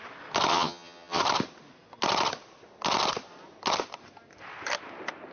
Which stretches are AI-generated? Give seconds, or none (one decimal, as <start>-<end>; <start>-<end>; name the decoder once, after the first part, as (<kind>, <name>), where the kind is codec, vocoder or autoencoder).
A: 0.5-1.2 (vocoder, HiFi-GAN)